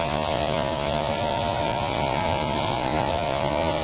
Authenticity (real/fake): fake